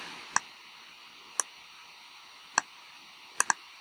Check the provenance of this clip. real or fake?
real